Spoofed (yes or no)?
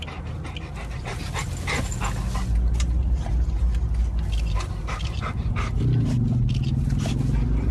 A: no